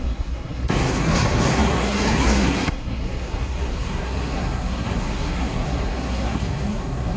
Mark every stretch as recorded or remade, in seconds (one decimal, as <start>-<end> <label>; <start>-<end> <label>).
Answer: 0.0-7.2 remade